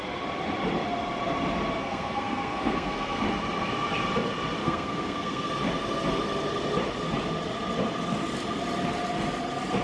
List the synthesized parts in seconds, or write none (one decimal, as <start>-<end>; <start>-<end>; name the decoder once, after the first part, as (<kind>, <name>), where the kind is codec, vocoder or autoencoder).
1.8-3.2 (codec, SNAC); 4.6-5.5